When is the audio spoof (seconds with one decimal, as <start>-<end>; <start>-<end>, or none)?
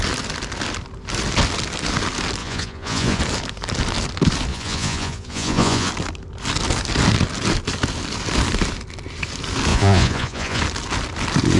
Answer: 2.4-3.2; 4.5-5.9; 9.7-10.6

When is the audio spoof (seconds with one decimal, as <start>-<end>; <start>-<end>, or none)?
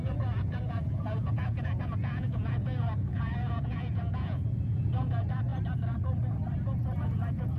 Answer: 0.0-5.5; 7.0-7.6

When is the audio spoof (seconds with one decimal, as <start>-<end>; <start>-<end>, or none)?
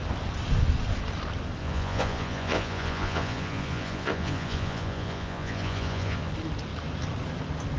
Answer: 1.6-6.3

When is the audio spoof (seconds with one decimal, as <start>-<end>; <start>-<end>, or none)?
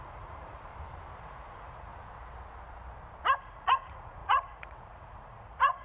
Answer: 0.0-0.7; 1.2-1.9; 3.4-5.8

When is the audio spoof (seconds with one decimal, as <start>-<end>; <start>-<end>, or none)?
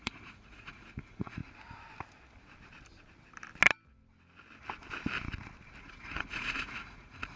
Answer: 0.0-1.4; 5.8-7.4